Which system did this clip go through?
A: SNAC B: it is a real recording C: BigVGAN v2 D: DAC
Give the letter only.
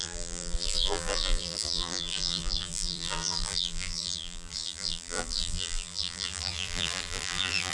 C